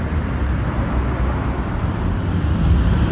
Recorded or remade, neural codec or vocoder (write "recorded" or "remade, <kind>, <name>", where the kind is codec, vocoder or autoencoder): recorded